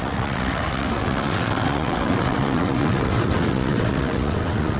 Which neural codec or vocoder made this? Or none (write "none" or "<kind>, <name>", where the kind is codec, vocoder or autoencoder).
vocoder, WaveNeXt